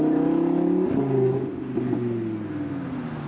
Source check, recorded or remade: recorded